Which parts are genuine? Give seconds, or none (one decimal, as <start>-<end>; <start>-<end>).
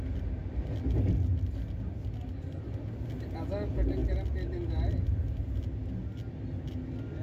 0.0-7.2